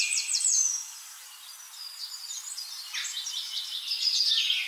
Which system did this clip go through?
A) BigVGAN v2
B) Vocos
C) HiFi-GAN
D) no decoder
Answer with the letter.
D